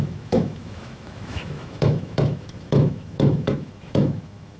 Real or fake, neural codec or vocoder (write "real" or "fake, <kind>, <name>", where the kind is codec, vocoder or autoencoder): fake, autoencoder, DAC-VAE